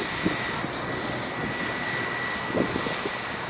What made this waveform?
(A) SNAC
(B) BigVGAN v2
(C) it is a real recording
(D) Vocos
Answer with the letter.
C